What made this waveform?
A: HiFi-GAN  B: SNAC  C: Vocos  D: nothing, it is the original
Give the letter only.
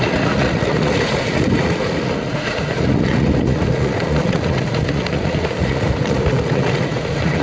C